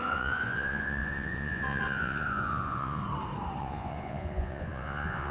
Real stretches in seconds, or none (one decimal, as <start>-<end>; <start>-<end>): 3.0-3.6